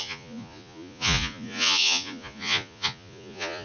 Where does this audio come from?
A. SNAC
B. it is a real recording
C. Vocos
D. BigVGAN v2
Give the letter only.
C